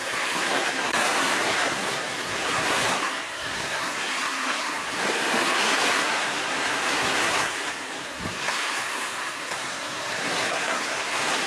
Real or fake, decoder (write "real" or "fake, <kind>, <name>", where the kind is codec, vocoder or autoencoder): fake, codec, SNAC